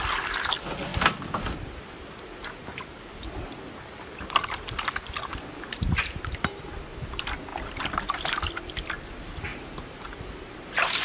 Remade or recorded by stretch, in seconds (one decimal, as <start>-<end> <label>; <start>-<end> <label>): 0.0-7.5 recorded; 7.5-8.4 remade; 8.4-9.5 recorded; 9.5-10.0 remade; 10.0-11.0 recorded